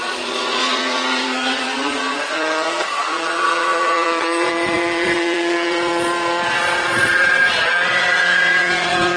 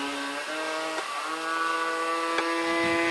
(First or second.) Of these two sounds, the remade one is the first